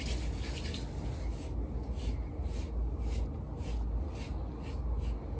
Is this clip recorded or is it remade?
recorded